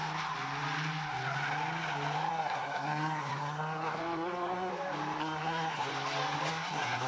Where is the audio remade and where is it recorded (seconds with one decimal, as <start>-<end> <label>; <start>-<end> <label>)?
0.0-2.3 recorded; 2.3-4.7 remade; 4.7-5.2 recorded; 5.2-5.9 remade; 5.9-6.5 recorded; 6.5-7.1 remade